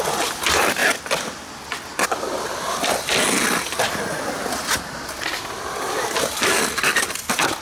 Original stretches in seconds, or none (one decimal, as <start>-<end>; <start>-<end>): 0.0-7.6